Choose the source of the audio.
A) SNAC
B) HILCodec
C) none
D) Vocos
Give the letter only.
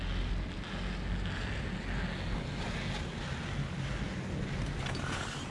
C